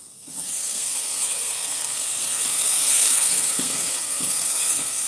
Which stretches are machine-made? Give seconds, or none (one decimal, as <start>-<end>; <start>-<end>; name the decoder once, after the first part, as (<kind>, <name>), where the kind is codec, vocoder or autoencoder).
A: 0.0-5.1 (codec, SNAC)